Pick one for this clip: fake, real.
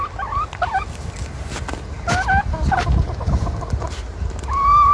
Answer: real